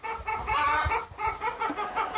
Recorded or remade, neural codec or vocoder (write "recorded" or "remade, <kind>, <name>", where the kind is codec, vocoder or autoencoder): recorded